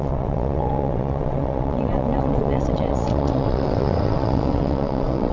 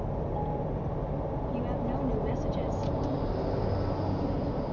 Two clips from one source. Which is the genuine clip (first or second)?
second